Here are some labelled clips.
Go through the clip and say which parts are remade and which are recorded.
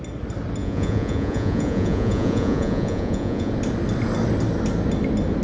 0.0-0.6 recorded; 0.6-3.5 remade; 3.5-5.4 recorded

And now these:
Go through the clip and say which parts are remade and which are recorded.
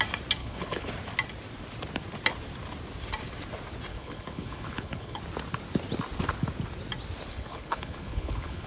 0.0-0.4 recorded; 0.4-0.9 remade; 0.9-3.9 recorded; 3.9-5.2 remade; 5.2-7.3 recorded; 7.3-8.7 remade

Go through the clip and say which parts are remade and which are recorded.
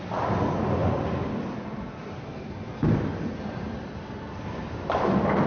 0.0-5.5 recorded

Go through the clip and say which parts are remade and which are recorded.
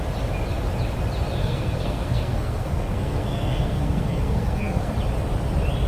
0.0-1.4 recorded; 1.4-4.9 remade; 4.9-5.9 recorded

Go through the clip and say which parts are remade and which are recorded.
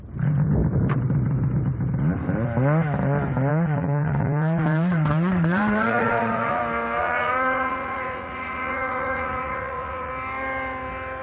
0.0-3.5 recorded; 3.5-6.6 remade; 6.6-7.0 recorded; 7.0-10.1 remade; 10.1-11.2 recorded